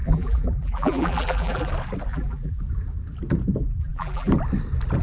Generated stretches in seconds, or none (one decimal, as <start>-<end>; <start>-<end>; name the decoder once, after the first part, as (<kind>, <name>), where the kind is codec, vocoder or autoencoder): 0.0-1.7 (vocoder, BigVGAN v2); 2.1-2.6; 3.6-4.3